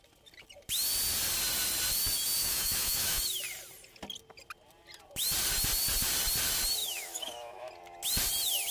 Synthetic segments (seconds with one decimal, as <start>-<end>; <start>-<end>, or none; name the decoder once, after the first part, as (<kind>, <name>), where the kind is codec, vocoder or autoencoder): 2.4-3.2 (autoencoder, DAC-VAE); 6.8-7.7